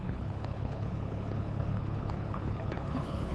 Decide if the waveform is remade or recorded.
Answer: remade